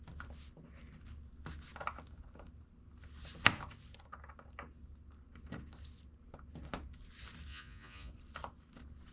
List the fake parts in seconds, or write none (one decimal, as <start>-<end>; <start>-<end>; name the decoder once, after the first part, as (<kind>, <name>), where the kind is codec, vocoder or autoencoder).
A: 7.5-8.1 (vocoder, Vocos)